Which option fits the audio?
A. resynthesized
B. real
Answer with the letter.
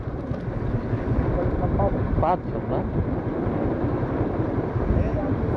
B